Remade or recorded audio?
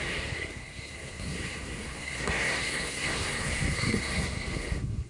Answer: remade